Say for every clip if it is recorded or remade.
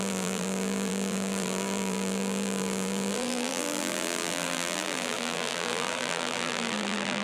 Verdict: remade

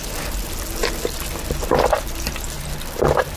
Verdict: recorded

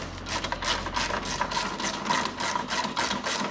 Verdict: recorded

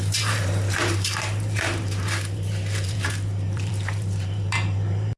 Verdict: remade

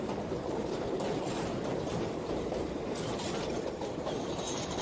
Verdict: remade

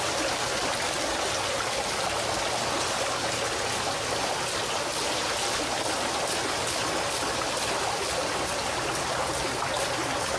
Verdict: recorded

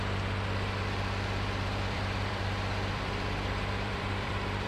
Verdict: remade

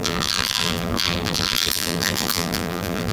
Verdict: remade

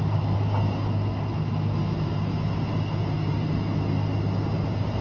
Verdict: remade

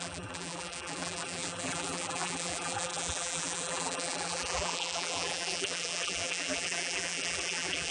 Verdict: remade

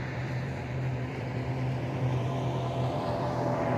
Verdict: remade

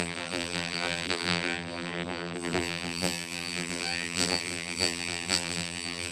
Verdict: remade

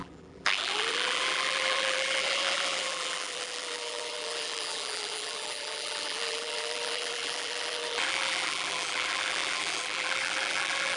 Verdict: remade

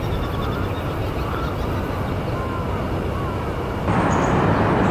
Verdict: recorded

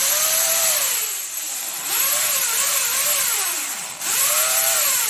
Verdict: remade